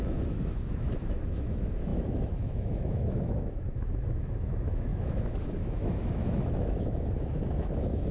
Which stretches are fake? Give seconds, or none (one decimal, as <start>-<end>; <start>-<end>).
0.0-8.1